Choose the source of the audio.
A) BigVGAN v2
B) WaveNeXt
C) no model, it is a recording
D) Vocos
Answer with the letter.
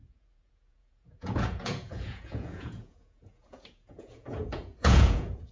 D